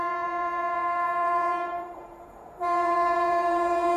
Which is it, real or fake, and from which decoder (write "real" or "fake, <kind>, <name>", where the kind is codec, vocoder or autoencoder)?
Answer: fake, vocoder, Vocos